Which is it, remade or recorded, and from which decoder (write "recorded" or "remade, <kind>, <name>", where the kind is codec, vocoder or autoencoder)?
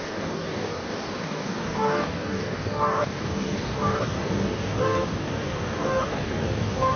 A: remade, codec, DAC